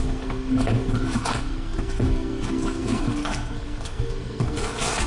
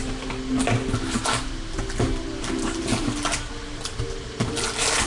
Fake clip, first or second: first